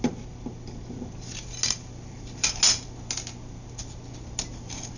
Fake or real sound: real